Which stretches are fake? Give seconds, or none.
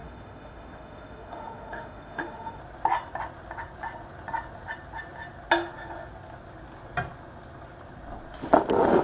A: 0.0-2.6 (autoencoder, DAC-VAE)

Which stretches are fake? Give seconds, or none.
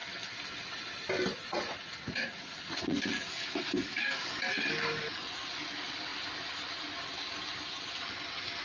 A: 1.3-3.0 (vocoder, Vocos)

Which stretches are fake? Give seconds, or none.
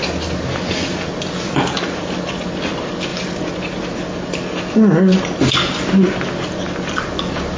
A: none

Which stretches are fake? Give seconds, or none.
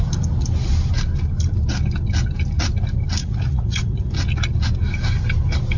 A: 3.2-4.1 (vocoder, Vocos)